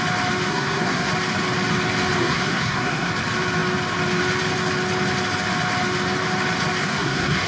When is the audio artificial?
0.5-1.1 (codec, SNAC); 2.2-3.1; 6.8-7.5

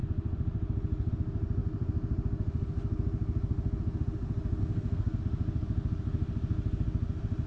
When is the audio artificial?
4.6-5.2 (codec, SNAC)

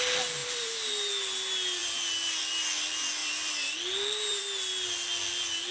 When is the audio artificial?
0.4-1.1 (vocoder, BigVGAN v2); 1.8-2.4; 3.2-4.4